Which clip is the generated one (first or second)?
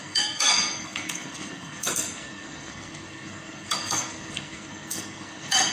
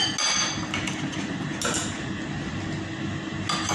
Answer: first